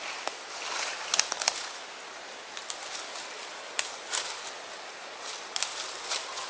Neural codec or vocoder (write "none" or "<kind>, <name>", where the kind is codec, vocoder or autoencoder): none